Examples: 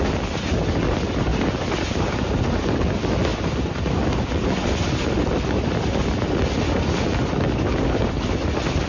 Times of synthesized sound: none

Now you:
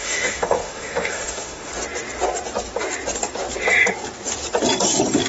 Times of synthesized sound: 0.0-1.7 (autoencoder, DAC-VAE)

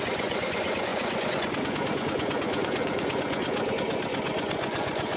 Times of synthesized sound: 0.0-5.2 (vocoder, Vocos)

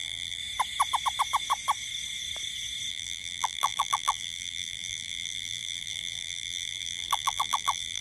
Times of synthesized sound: 0.0-0.4 (vocoder, BigVGAN v2); 2.9-8.0

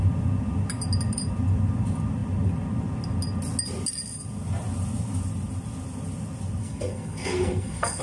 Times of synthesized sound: 6.6-8.0 (codec, SNAC)

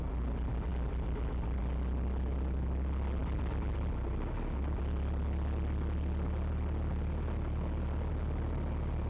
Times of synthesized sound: none

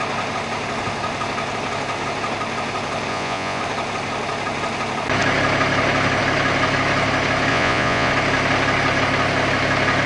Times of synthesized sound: 3.1-3.6 (vocoder, Vocos); 7.5-8.1

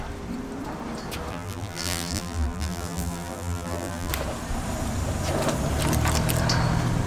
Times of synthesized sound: 1.3-4.1 (vocoder, BigVGAN v2)